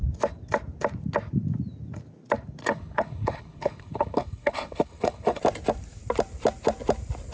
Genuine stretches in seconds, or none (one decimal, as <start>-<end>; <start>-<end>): 0.0-2.6; 5.4-7.3